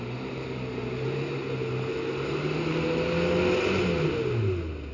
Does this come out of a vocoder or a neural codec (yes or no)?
no